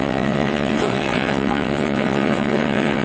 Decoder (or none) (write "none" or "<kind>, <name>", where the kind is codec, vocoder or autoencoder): vocoder, WaveNeXt